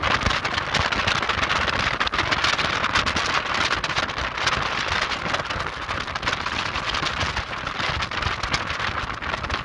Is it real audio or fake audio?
real